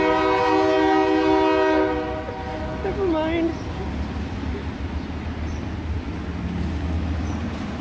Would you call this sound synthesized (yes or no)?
no